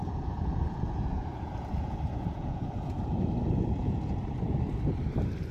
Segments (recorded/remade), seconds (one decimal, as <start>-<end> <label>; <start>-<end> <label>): 0.0-3.3 remade; 3.3-3.8 recorded; 3.8-4.4 remade; 4.4-5.5 recorded